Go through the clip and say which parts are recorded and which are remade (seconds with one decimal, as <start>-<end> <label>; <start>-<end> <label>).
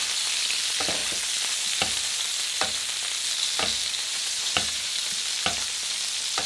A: 0.0-4.1 recorded; 4.1-4.9 remade; 4.9-6.5 recorded